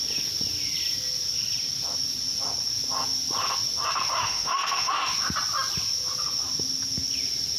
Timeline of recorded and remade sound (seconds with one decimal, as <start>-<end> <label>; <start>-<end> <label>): 0.0-4.2 recorded; 4.2-4.9 remade; 4.9-7.6 recorded